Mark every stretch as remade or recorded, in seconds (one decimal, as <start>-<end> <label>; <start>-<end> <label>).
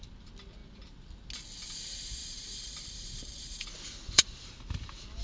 0.0-2.2 recorded; 2.2-4.5 remade; 4.5-5.2 recorded